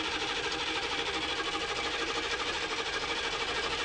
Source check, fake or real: fake